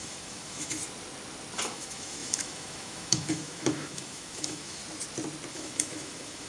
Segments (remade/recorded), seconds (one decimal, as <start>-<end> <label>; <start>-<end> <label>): 0.0-0.8 remade; 0.8-1.6 recorded; 1.6-4.8 remade; 4.8-5.5 recorded; 5.5-6.5 remade